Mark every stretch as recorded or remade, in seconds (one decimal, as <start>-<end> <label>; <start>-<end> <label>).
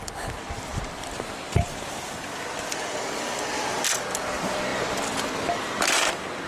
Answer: 0.0-0.7 recorded; 0.7-4.2 remade; 4.2-6.5 recorded